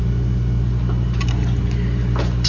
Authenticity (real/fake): real